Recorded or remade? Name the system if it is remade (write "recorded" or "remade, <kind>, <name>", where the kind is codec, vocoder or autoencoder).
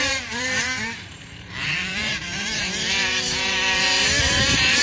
remade, vocoder, BigVGAN v2